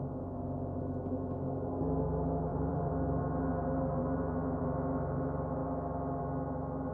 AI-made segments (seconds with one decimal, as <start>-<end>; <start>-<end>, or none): 2.5-3.2